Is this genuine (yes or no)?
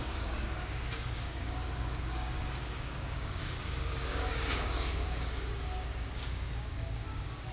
no